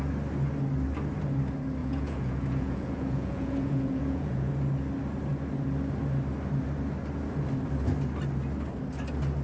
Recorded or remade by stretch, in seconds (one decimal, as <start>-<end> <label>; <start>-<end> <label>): 0.0-1.8 recorded; 1.8-4.5 remade; 4.5-9.4 recorded